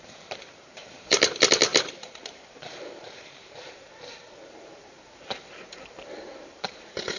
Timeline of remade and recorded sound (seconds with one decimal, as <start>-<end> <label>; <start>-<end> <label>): 0.0-7.2 remade